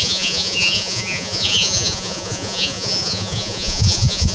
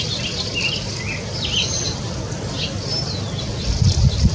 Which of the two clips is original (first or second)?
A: second